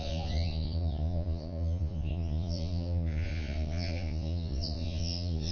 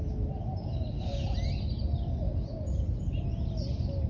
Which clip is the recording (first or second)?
second